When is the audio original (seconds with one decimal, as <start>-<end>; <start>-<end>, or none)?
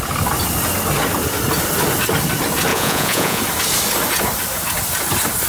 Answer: 0.0-2.7; 3.4-5.5